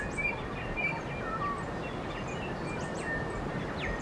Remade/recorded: recorded